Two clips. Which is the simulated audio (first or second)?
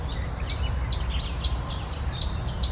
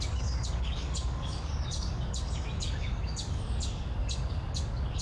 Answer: second